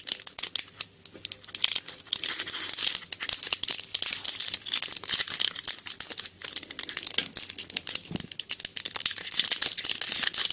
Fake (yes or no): no